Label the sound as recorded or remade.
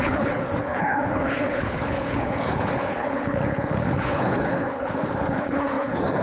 remade